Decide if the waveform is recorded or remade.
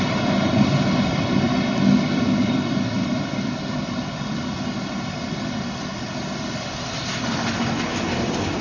recorded